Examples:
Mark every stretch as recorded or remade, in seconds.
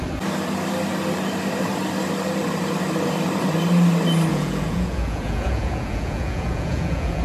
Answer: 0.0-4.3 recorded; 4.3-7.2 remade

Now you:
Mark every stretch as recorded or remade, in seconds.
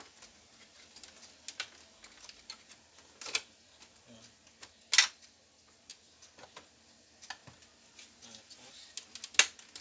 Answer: 0.0-9.8 recorded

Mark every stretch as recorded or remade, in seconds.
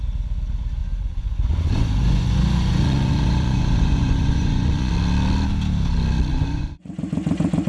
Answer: 0.0-0.8 recorded; 0.8-4.9 remade; 4.9-6.3 recorded; 6.3-6.9 remade; 6.9-7.7 recorded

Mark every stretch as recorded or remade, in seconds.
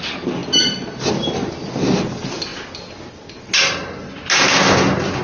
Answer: 0.0-5.2 recorded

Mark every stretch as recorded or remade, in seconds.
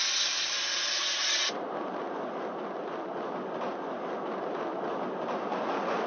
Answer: 0.0-6.1 recorded